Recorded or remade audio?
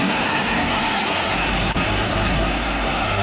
remade